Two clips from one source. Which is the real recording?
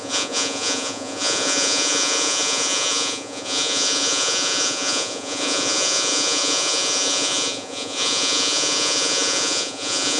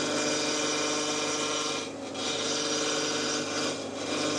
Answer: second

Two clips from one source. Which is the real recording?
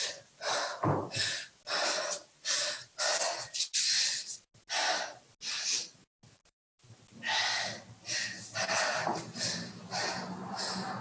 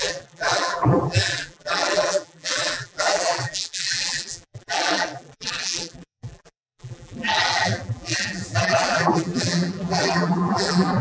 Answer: first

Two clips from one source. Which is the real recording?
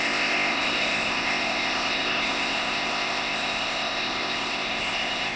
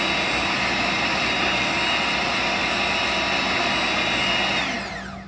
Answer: second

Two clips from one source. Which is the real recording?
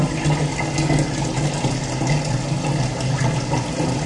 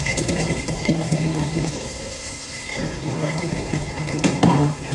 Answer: first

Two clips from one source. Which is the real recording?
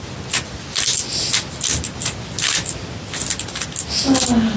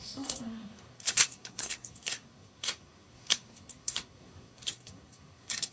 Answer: first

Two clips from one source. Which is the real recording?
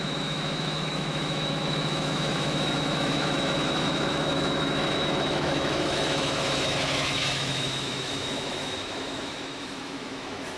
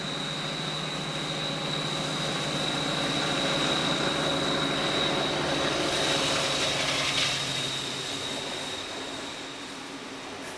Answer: second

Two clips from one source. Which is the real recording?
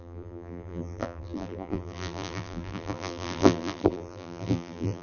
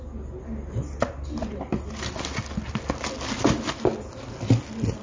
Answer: second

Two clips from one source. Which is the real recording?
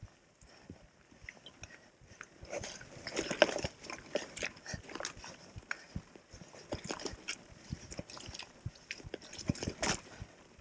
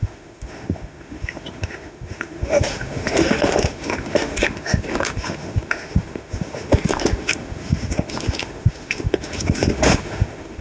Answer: first